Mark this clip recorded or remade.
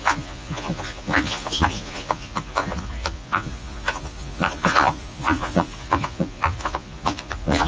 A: remade